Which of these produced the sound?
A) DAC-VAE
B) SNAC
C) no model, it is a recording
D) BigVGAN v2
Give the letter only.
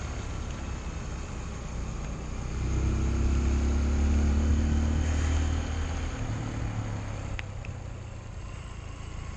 C